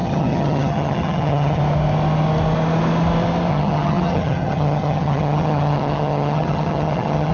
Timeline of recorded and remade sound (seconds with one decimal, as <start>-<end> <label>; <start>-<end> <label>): 0.0-1.6 remade; 1.6-3.5 recorded; 3.5-7.3 remade